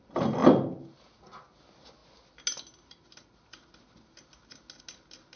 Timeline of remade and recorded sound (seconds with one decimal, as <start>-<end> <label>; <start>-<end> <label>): 0.0-5.4 recorded